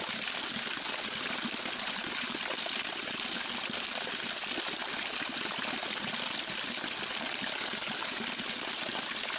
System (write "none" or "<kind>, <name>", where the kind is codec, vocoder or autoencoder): none